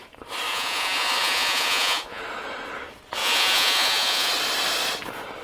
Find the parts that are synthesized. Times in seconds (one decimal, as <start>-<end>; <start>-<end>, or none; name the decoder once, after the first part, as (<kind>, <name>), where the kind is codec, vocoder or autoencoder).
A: 0.5-2.2 (vocoder, Vocos); 3.2-4.3